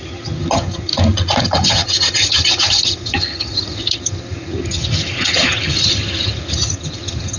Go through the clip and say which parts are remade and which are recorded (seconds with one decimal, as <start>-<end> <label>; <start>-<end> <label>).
0.0-0.9 remade; 0.9-1.4 recorded; 1.4-7.4 remade